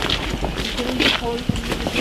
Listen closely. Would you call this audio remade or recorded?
recorded